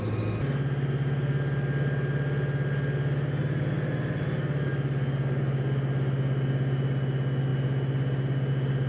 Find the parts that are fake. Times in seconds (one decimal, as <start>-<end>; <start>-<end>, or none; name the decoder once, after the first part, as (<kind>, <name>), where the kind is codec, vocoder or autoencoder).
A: none